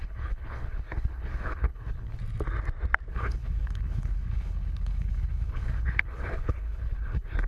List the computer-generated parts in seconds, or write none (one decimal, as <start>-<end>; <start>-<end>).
0.0-2.2; 3.1-7.5